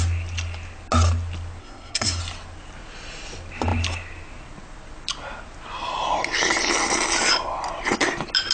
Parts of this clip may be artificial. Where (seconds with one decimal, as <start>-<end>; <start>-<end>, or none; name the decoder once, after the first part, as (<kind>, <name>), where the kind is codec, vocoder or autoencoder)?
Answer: 1.6-2.2 (codec, SNAC)